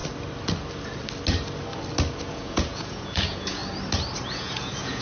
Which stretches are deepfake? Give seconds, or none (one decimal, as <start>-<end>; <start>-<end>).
2.3-3.6; 4.3-5.0